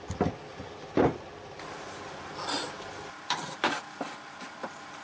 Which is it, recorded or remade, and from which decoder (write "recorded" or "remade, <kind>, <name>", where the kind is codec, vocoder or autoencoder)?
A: recorded